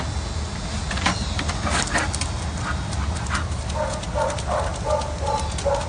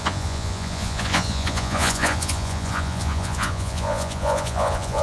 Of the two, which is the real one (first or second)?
first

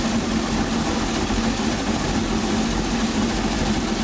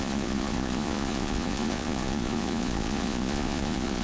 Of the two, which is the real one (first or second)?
first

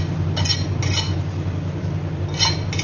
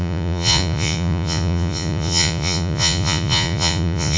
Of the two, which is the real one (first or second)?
first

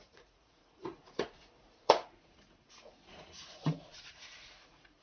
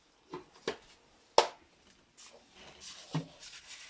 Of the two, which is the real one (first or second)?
second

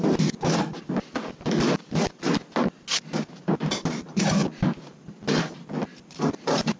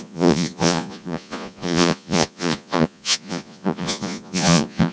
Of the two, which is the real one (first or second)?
first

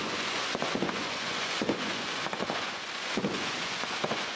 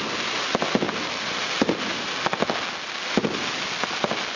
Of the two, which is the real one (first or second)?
second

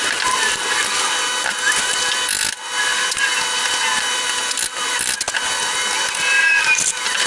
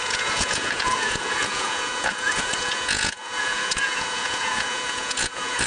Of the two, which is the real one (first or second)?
first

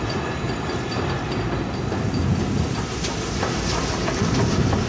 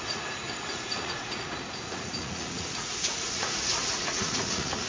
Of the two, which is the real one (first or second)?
first